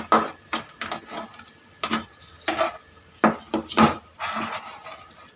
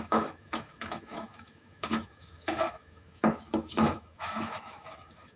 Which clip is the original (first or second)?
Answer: first